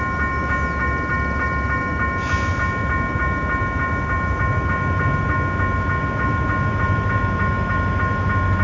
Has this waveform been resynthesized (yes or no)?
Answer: no